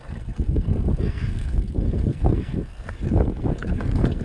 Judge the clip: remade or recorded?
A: remade